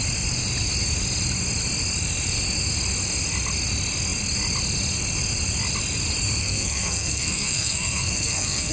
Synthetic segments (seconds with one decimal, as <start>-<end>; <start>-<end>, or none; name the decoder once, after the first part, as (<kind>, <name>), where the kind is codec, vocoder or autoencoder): 6.4-8.7 (codec, SNAC)